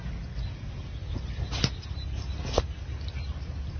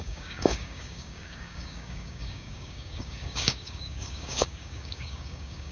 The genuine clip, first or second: first